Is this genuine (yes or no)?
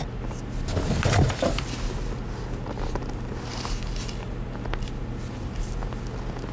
yes